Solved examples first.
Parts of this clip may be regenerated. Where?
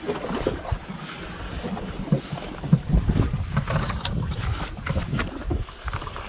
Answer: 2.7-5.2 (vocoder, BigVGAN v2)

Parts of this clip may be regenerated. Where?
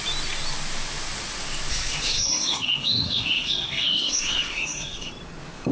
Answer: 1.7-5.1 (codec, SNAC)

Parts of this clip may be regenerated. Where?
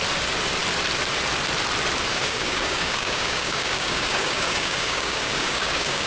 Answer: 2.1-6.1 (codec, DAC)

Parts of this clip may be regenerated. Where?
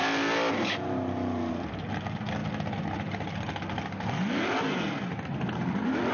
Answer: none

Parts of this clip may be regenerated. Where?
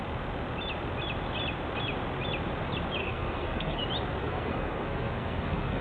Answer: 3.0-3.8 (codec, SNAC); 4.2-5.8